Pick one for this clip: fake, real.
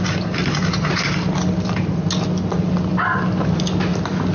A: real